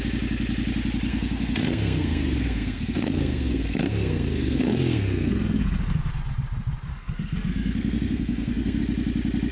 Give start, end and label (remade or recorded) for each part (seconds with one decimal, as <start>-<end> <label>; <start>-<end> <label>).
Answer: 0.0-1.1 recorded; 1.1-6.1 remade; 6.1-6.9 recorded; 6.9-8.8 remade; 8.8-9.5 recorded